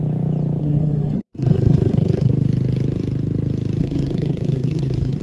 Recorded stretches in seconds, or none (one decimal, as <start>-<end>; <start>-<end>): 0.0-0.6; 2.3-3.8